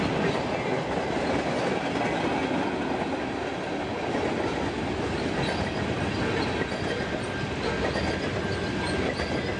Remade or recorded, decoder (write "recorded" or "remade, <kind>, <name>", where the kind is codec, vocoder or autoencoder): recorded